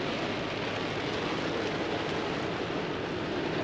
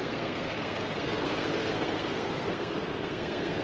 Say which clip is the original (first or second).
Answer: first